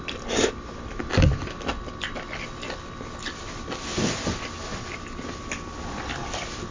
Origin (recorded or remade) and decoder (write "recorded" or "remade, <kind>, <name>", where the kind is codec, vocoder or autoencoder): recorded